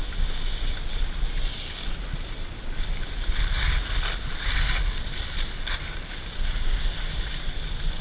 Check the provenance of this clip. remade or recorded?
recorded